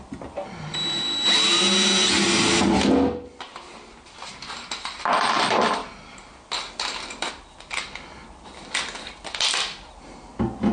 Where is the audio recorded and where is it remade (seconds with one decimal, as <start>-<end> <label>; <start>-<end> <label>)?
0.0-10.7 recorded